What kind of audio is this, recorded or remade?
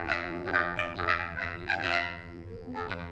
remade